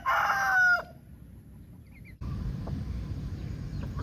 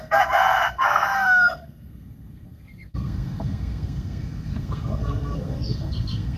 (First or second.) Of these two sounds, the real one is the first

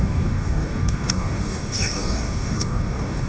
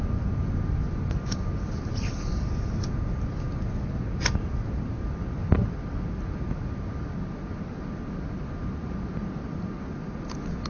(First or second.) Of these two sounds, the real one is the second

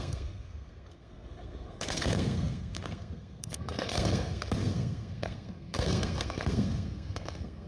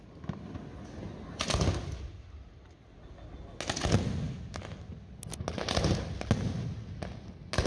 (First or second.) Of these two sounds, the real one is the second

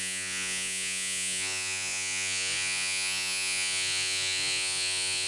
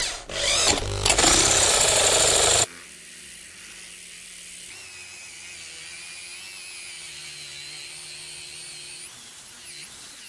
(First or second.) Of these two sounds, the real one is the second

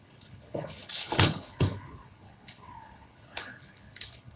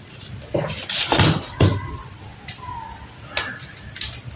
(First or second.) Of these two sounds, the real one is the second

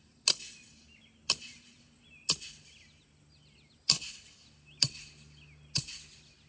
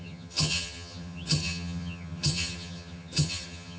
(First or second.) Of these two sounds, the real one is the first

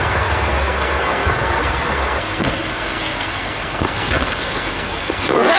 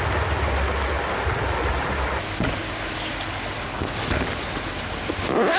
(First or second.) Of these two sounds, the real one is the second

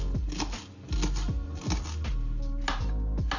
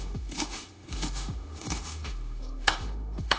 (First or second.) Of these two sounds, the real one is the first